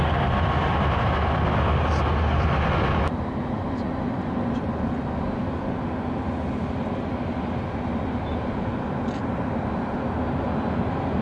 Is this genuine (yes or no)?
yes